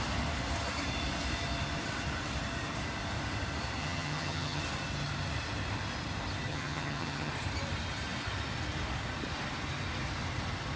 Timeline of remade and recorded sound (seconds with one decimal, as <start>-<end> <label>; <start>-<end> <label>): 0.0-3.8 recorded; 3.8-4.6 remade; 4.6-6.5 recorded; 6.5-7.3 remade; 7.3-10.8 recorded